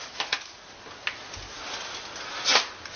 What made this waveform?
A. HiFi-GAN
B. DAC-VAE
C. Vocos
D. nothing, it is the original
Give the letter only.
D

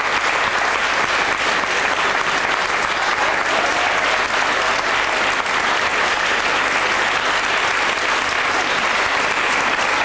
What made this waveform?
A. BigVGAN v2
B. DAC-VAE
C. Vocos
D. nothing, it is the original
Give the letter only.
D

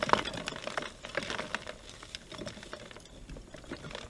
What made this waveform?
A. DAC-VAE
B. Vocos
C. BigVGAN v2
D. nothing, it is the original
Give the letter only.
D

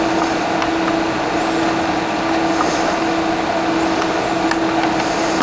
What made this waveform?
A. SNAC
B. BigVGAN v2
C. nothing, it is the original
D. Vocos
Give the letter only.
C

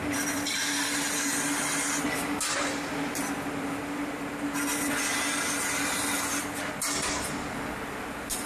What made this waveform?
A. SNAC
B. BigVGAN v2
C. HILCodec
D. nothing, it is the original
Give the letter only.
D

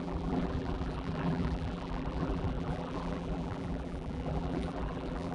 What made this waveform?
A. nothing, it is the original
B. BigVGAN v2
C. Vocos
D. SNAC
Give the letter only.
B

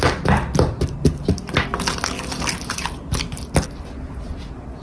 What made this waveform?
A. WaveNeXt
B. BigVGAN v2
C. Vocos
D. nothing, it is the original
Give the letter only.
D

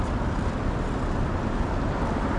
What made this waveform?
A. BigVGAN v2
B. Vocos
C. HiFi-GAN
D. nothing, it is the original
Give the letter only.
D